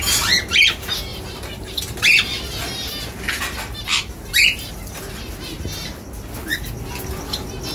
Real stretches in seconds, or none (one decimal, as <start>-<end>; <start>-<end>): 0.0-1.1; 1.8-3.9; 4.7-7.7

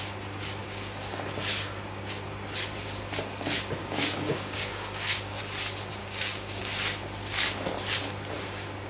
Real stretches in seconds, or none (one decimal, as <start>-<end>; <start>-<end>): 0.0-0.6; 1.1-3.8; 5.4-6.0; 6.6-8.9

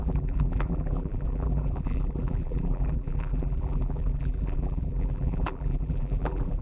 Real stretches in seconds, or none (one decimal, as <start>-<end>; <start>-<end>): none

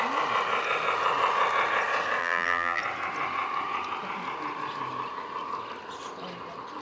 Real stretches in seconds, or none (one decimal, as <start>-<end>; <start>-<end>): 0.0-2.2; 2.8-6.8

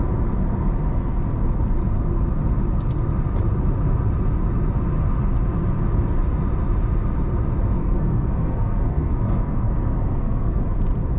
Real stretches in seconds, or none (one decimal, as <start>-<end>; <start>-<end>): 0.0-7.8; 10.6-11.2

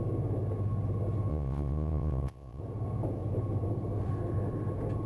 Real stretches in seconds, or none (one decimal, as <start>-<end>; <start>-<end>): 0.0-1.3; 2.6-5.1

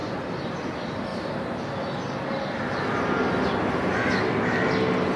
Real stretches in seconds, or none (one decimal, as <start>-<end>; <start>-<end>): 0.5-5.2

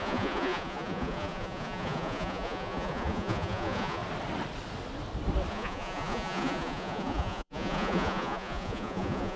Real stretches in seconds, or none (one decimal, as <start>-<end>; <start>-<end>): 4.0-5.5